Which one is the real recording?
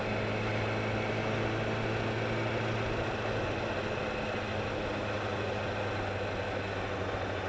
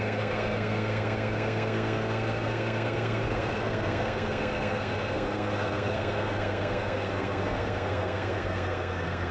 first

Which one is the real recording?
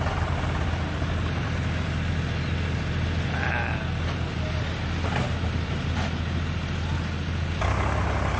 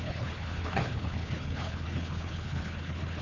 first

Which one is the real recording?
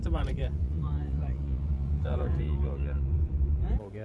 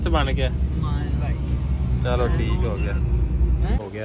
second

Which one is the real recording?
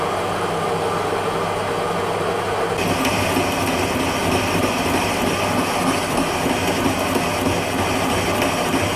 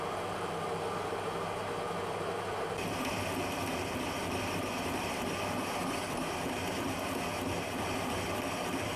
first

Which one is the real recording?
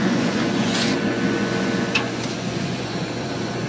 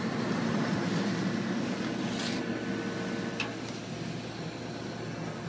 second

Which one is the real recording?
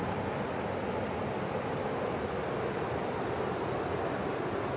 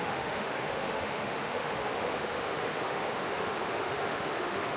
first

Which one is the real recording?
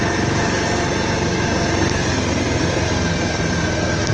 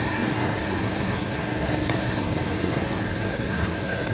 first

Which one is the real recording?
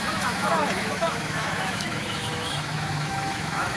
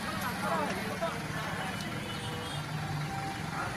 second